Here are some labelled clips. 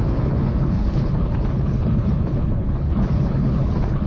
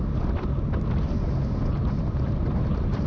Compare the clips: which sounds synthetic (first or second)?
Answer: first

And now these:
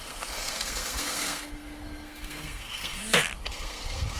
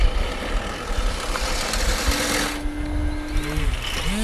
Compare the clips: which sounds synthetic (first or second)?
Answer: first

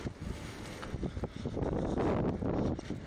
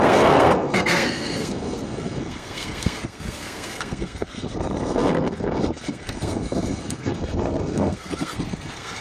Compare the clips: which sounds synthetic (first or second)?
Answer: second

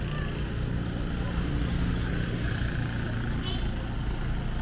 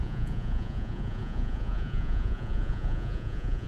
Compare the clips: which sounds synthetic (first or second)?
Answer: second